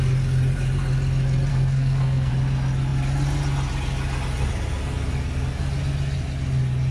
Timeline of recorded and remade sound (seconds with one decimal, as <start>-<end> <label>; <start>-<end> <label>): 0.0-1.5 recorded; 1.5-2.3 remade; 2.3-6.9 recorded